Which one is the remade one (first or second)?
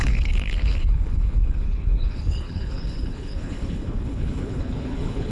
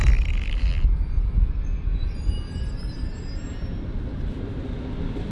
first